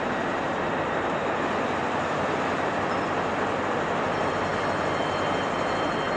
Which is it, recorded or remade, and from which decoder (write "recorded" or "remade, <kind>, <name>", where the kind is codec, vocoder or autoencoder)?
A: remade, vocoder, BigVGAN v2